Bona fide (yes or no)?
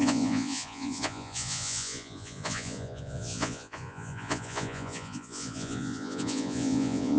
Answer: no